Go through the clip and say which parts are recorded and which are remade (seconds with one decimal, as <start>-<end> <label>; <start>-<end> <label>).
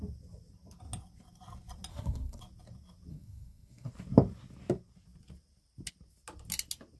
0.0-1.9 recorded; 1.9-2.4 remade; 2.4-3.1 recorded; 3.1-3.9 remade; 3.9-7.0 recorded